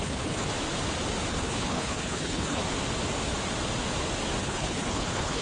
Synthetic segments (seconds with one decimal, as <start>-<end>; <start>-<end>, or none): 0.0-0.5; 1.3-2.6; 4.4-5.4